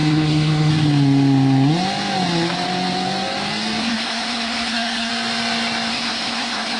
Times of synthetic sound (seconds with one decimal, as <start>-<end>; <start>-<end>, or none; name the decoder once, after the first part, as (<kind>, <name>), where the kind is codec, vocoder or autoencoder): 0.0-0.7 (codec, SNAC); 3.8-5.1; 5.9-6.8